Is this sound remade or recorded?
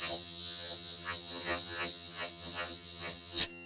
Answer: remade